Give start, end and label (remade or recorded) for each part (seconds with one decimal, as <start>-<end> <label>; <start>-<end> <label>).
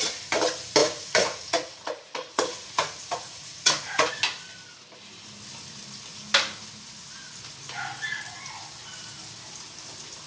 0.0-0.8 recorded; 0.8-4.1 remade; 4.1-10.3 recorded